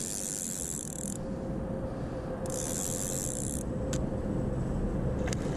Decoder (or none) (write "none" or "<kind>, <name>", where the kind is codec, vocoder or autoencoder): none